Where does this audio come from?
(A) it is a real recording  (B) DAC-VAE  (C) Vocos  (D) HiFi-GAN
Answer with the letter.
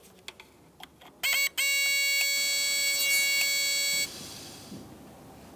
A